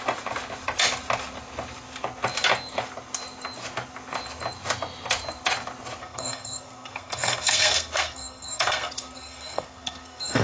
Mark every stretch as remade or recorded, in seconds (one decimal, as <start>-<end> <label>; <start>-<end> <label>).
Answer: 0.0-6.0 recorded; 6.0-10.4 remade